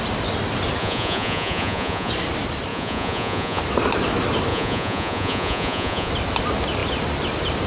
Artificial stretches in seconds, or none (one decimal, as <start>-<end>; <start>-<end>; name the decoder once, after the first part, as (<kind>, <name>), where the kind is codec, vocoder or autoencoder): 0.8-2.1 (vocoder, Vocos); 2.7-3.6; 4.5-6.1